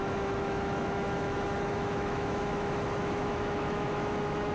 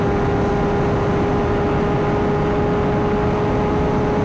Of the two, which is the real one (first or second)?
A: second